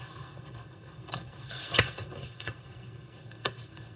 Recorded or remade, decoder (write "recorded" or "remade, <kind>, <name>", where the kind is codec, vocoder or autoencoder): remade, codec, SNAC